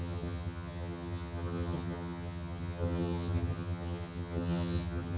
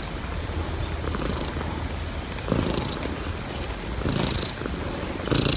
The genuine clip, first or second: second